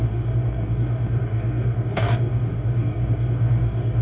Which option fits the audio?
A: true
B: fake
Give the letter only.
B